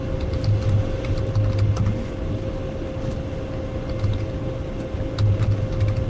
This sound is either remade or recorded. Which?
recorded